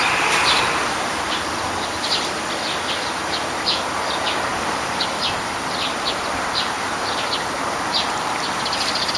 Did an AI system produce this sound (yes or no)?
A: yes